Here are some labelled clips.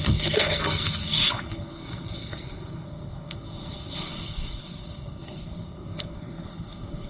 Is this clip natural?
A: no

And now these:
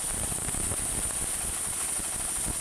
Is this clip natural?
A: yes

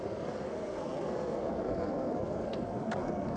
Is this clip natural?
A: no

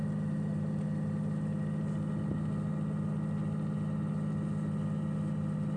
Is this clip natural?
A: yes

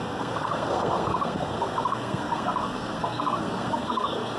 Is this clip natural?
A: no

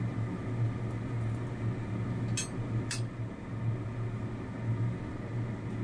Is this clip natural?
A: yes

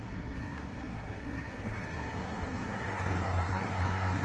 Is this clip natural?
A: no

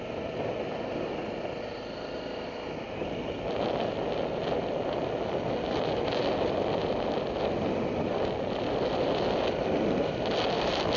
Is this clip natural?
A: yes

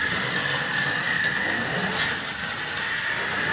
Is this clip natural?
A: yes